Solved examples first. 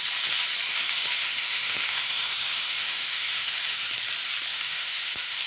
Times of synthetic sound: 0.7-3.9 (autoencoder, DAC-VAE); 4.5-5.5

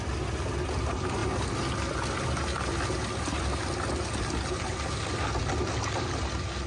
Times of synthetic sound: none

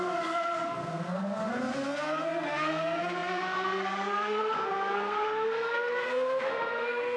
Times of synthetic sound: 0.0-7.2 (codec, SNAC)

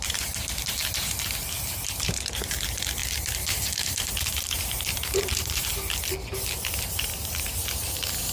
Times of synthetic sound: 0.0-5.7 (vocoder, BigVGAN v2); 6.9-8.3